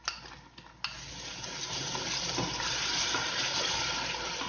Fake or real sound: real